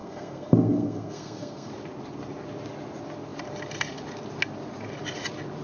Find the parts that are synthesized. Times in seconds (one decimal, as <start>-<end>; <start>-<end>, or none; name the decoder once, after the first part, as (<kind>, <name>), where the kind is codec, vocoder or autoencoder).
0.0-1.7 (codec, SNAC)